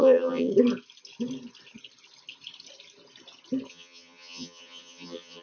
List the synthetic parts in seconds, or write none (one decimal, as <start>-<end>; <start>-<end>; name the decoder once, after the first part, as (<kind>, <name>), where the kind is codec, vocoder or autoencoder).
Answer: 0.0-0.5 (vocoder, HiFi-GAN); 3.7-5.4